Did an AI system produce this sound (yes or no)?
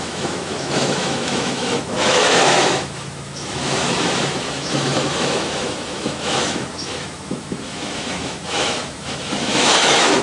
yes